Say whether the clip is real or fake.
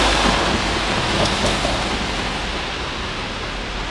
real